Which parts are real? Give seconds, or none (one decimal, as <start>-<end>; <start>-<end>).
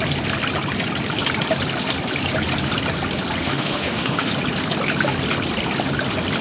0.0-3.4; 4.3-6.4